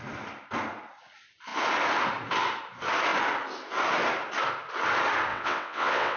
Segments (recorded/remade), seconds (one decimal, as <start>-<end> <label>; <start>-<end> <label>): 0.0-5.3 recorded; 5.3-6.2 remade